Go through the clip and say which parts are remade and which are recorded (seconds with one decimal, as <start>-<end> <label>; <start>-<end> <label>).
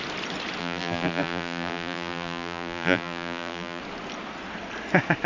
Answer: 0.0-0.6 recorded; 0.6-3.8 remade; 3.8-5.3 recorded